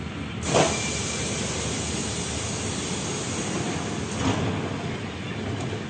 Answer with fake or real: real